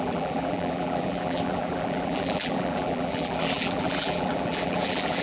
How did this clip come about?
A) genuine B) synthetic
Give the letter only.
B